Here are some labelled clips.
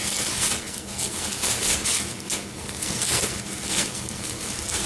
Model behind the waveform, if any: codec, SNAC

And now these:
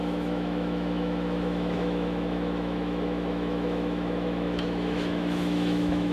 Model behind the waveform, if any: autoencoder, DAC-VAE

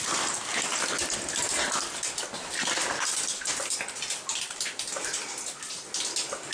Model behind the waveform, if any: none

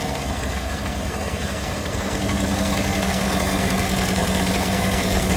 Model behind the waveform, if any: codec, SNAC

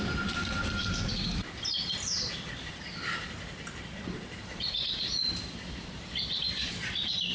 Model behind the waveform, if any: vocoder, BigVGAN v2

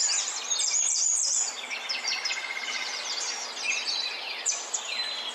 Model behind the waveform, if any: none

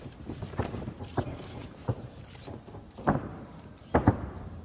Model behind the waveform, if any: vocoder, BigVGAN v2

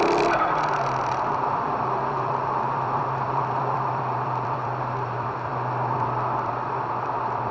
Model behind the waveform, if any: vocoder, BigVGAN v2